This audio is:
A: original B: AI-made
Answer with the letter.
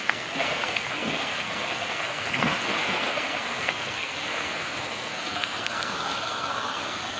B